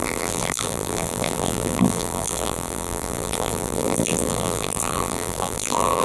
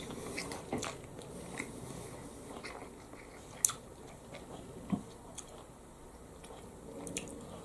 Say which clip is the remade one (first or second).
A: first